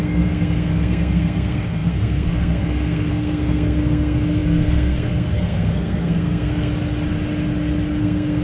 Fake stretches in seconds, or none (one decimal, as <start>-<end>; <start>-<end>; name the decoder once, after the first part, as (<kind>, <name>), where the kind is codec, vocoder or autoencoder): 0.0-6.7 (codec, SNAC); 8.0-8.4